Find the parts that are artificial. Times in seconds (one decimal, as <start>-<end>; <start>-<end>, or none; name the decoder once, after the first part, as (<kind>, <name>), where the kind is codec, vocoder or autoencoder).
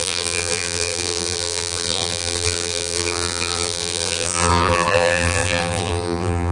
0.0-6.5 (vocoder, BigVGAN v2)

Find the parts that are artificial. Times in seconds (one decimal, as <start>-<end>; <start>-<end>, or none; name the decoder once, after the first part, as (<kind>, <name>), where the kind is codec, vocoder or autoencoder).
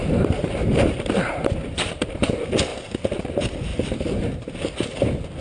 0.0-2.3 (vocoder, BigVGAN v2); 2.7-3.3; 3.7-4.6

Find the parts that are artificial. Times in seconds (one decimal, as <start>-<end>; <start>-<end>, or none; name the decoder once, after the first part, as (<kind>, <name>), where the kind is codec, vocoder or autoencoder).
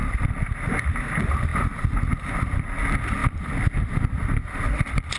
0.0-0.9 (vocoder, BigVGAN v2); 1.5-2.6; 3.2-4.8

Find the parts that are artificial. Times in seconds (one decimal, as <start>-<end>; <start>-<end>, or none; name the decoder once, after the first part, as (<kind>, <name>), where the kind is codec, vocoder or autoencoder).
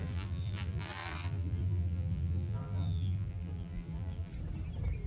0.0-4.3 (vocoder, BigVGAN v2)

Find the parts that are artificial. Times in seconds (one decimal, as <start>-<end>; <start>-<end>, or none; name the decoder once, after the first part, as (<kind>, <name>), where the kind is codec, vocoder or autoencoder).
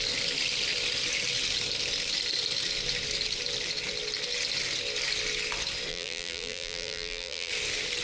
5.9-7.5 (vocoder, BigVGAN v2)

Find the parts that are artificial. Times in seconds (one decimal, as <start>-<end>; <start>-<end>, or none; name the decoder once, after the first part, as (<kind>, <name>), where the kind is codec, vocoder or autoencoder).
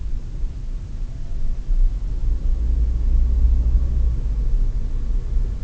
0.0-0.7 (vocoder, BigVGAN v2)